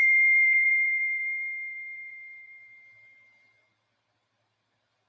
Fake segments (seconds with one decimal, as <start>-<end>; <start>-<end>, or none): 0.0-5.1